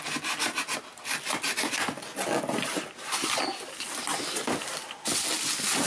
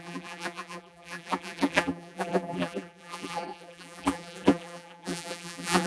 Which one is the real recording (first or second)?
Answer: first